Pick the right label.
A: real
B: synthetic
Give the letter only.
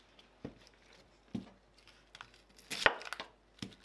A